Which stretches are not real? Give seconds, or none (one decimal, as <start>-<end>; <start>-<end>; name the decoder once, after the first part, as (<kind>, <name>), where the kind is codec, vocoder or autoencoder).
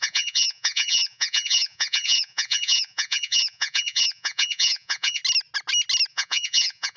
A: 0.0-5.2 (vocoder, Vocos); 6.1-7.0